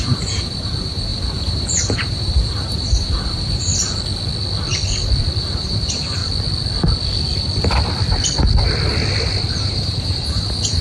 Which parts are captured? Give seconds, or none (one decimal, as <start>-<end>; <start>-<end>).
3.7-5.4; 6.2-9.5